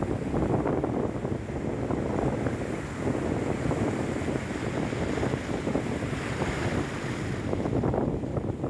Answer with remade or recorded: recorded